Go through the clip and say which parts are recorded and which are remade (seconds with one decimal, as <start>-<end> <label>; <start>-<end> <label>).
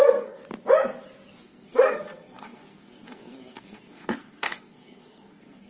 0.0-0.4 remade; 0.4-1.4 recorded; 1.4-5.7 remade